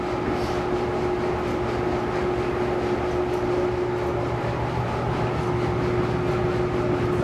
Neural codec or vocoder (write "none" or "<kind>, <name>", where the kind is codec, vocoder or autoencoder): none